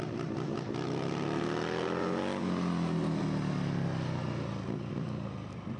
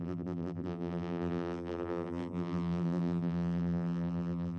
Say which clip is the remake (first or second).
second